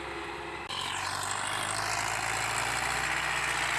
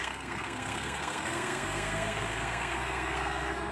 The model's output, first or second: second